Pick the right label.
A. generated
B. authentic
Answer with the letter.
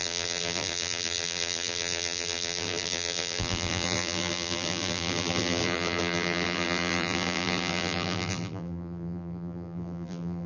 A